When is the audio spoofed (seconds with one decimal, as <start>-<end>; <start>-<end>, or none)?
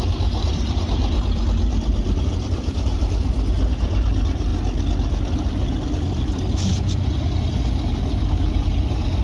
0.0-4.5; 7.9-9.2